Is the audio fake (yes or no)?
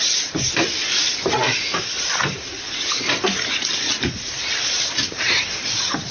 yes